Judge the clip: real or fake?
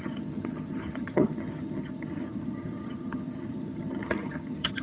fake